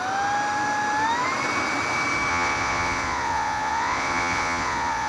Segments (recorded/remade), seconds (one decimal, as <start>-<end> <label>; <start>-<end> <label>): 0.0-2.3 recorded; 2.3-5.1 remade

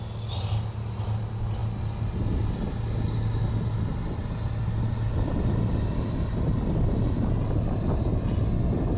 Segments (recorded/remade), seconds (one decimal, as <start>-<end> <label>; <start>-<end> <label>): 0.0-9.0 recorded

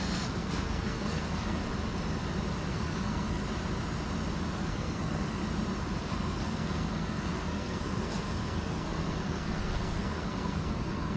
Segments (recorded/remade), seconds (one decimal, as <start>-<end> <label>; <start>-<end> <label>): 0.0-1.6 remade; 1.6-2.7 recorded; 2.7-3.4 remade; 3.4-4.5 recorded; 4.5-5.4 remade; 5.4-6.0 recorded; 6.0-11.2 remade

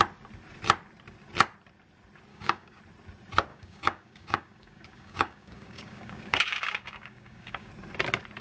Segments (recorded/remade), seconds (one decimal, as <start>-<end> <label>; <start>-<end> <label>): 0.0-2.3 recorded; 2.3-2.8 remade; 2.8-3.5 recorded; 3.5-7.7 remade; 7.7-8.4 recorded

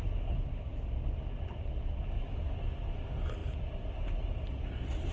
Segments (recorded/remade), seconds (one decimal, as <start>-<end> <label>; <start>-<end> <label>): 0.0-3.4 recorded; 3.4-4.0 remade; 4.0-5.1 recorded